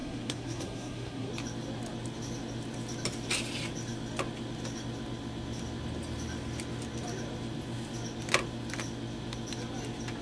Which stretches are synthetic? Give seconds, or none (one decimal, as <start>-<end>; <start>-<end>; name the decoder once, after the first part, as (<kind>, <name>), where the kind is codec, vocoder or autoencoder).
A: 0.0-1.3 (codec, SNAC)